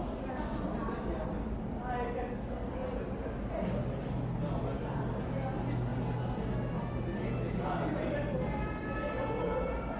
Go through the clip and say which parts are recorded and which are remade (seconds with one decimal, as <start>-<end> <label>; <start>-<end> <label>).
0.0-10.0 recorded